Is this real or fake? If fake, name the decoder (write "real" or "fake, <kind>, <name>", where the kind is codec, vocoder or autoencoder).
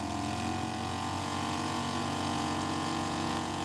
fake, vocoder, Vocos